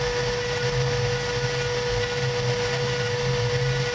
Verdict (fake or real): real